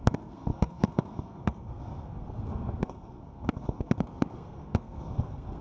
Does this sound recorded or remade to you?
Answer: remade